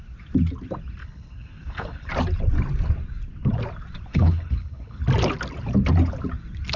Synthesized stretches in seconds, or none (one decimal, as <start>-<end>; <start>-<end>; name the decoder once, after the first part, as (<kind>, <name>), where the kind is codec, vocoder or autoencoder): 1.0-2.1 (codec, HILCodec); 4.1-5.0